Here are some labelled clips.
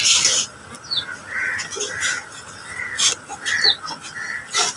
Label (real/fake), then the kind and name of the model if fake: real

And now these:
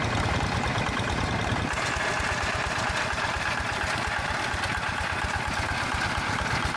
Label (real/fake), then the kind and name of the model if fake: real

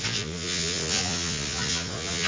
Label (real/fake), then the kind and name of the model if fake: fake, vocoder, Vocos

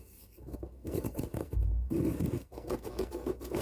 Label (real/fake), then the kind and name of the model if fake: fake, codec, SNAC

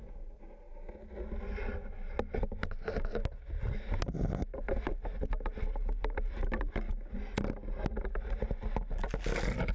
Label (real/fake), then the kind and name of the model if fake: real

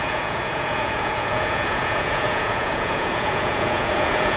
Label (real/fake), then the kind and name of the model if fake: fake, vocoder, Vocos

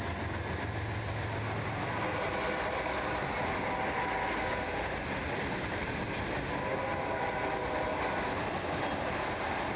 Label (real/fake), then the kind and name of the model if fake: real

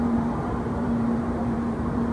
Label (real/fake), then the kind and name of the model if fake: fake, vocoder, BigVGAN v2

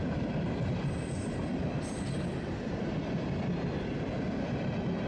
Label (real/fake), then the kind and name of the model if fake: real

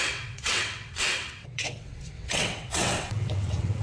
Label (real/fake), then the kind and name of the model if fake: fake, vocoder, WaveNeXt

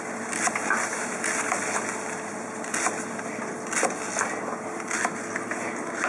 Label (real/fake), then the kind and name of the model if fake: real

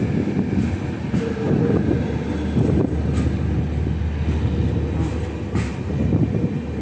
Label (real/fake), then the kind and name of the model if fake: real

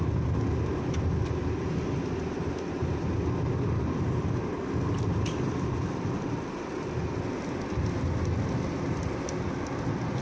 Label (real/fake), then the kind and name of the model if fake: real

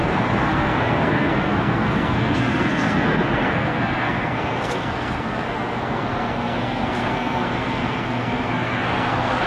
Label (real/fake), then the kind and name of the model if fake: fake, codec, SNAC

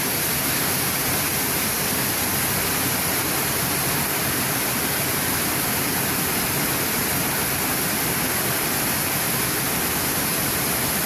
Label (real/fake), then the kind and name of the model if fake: real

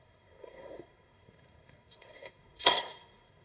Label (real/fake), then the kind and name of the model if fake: fake, codec, SNAC